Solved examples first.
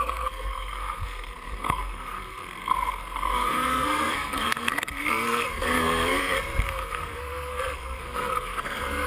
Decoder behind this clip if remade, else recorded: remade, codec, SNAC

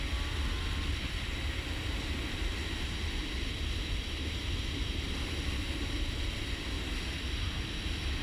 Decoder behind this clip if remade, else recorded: recorded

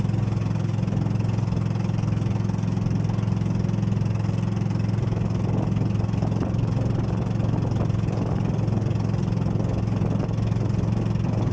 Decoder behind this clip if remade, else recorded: recorded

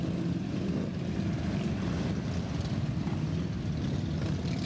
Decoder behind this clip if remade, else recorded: recorded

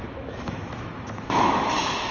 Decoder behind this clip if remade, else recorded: remade, autoencoder, DAC-VAE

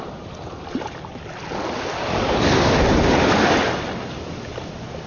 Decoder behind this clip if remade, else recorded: recorded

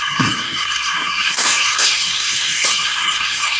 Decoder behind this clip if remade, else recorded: remade, codec, SNAC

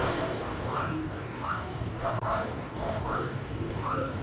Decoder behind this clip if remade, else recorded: remade, codec, DAC